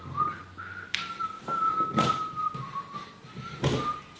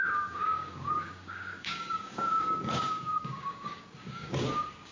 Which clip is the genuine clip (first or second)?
first